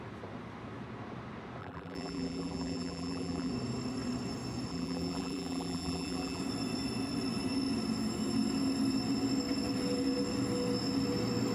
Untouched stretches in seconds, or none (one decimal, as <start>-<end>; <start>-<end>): 0.0-1.6; 3.5-4.7; 6.4-11.5